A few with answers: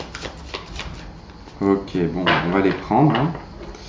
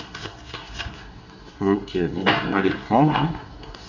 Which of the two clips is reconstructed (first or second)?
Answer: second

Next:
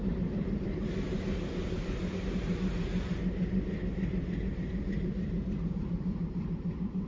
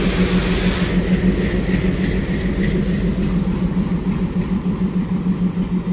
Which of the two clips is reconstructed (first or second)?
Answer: first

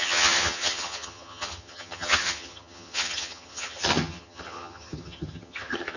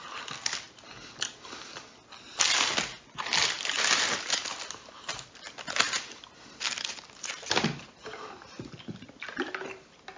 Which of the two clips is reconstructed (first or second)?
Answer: first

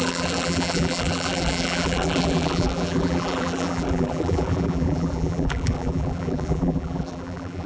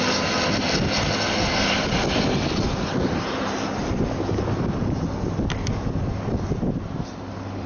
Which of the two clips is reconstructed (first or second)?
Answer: first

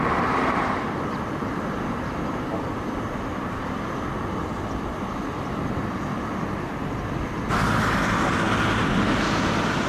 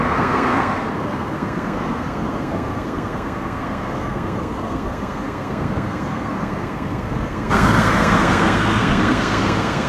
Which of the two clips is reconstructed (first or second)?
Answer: second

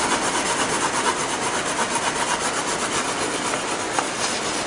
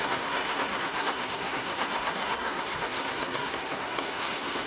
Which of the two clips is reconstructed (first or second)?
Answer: second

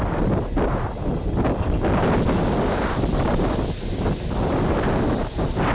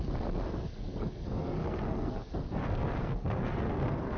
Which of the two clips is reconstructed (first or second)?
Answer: second